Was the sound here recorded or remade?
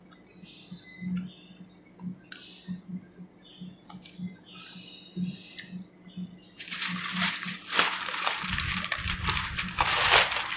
recorded